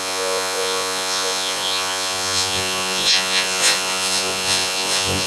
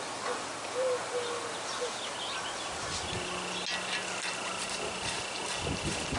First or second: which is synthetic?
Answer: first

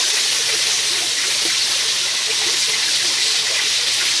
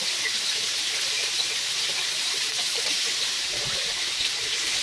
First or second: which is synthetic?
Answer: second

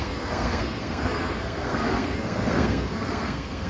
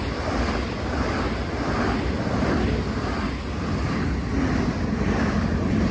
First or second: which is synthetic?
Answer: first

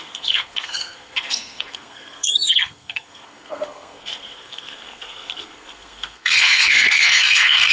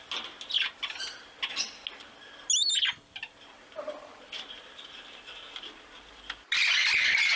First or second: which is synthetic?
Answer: first